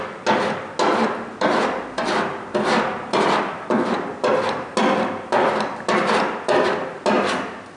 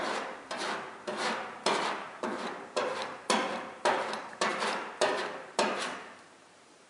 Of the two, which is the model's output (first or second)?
second